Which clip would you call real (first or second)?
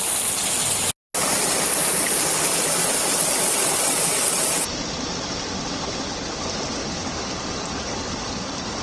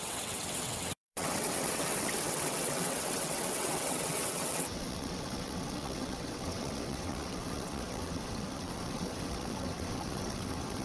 first